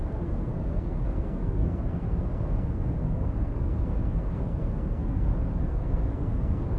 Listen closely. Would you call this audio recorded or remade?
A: remade